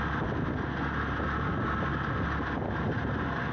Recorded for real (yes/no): yes